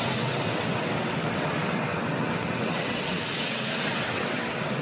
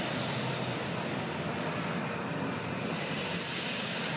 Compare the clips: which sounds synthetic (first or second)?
first